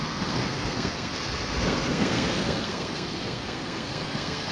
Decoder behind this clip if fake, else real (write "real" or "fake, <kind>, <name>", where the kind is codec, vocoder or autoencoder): fake, codec, SNAC